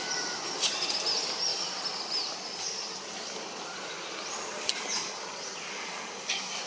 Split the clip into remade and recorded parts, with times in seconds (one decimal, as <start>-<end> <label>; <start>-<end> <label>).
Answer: 0.0-6.7 recorded